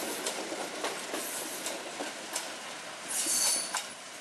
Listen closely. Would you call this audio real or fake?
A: real